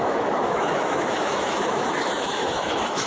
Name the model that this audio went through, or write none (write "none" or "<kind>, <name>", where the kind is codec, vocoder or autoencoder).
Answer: autoencoder, DAC-VAE